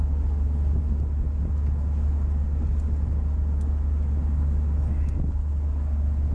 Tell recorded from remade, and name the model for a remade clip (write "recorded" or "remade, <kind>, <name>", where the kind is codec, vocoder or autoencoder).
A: recorded